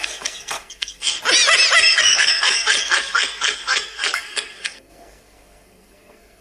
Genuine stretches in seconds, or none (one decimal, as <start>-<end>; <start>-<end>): 1.2-1.8